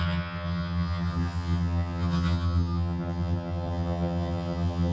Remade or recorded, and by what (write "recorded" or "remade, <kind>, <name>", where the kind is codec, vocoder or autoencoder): remade, vocoder, HiFi-GAN